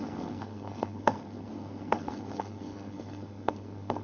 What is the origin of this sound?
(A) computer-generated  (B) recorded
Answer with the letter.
A